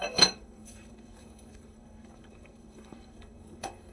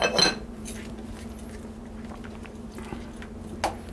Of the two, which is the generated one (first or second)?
first